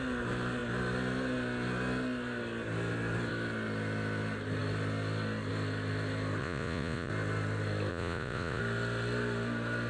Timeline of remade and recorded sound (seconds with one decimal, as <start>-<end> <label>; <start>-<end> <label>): 0.0-6.4 recorded; 6.4-7.1 remade; 7.1-7.9 recorded; 7.9-8.6 remade; 8.6-9.9 recorded